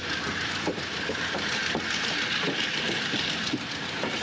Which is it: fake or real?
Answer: fake